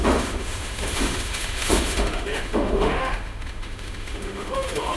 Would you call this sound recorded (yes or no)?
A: no